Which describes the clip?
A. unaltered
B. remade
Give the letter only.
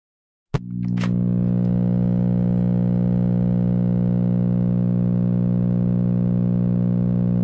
A